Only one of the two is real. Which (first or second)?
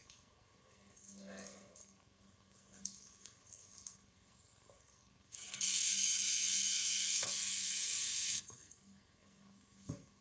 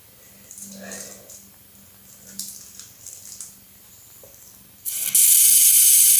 second